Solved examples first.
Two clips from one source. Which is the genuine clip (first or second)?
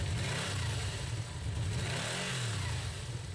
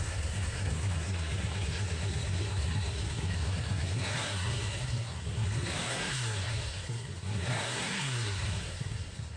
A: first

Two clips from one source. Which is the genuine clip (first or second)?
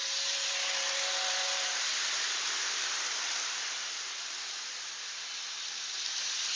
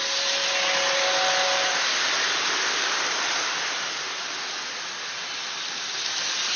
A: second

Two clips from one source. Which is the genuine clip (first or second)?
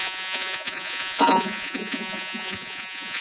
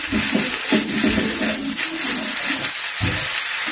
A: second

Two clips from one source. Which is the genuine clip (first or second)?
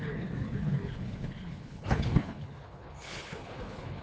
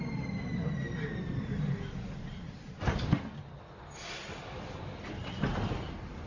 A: second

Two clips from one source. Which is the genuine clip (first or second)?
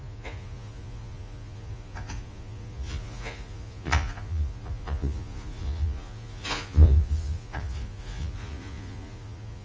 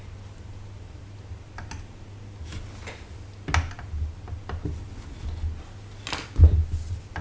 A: second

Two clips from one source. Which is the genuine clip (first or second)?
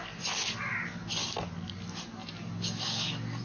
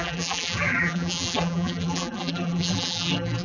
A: first